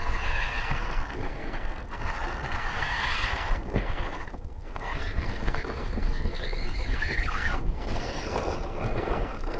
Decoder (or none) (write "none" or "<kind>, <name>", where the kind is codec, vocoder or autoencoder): codec, SNAC